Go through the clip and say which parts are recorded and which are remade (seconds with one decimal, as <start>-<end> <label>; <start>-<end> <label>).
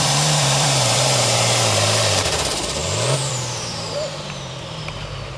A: 0.0-2.8 remade; 2.8-3.3 recorded; 3.3-5.4 remade